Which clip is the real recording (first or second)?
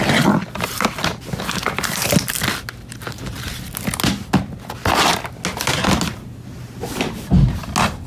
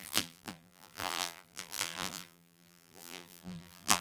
first